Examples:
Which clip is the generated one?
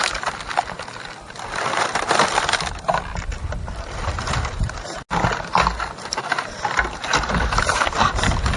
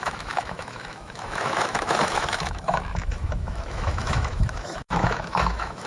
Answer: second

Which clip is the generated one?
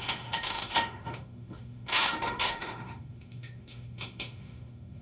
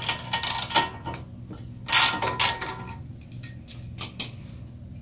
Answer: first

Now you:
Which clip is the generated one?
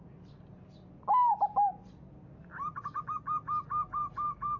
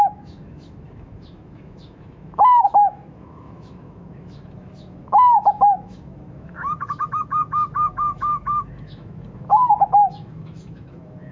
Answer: second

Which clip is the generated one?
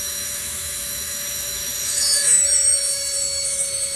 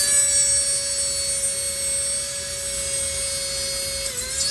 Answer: first